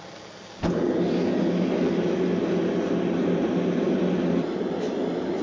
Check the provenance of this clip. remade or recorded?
recorded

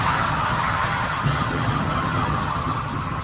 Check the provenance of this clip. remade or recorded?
remade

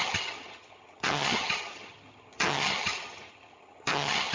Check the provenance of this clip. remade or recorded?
remade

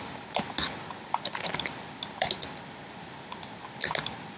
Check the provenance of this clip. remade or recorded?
recorded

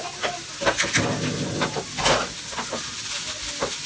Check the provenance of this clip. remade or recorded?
recorded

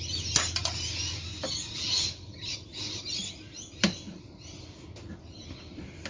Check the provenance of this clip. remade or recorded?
recorded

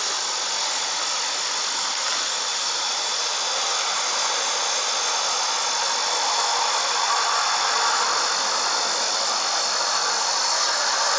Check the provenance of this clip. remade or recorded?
recorded